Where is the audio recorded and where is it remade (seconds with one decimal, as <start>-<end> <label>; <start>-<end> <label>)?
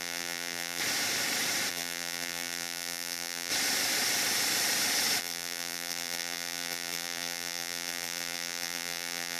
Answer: 0.0-0.8 remade; 0.8-1.7 recorded; 1.7-3.5 remade; 3.5-5.2 recorded; 5.2-9.4 remade